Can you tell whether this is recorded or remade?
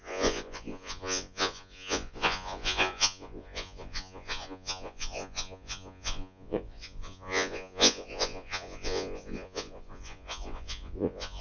remade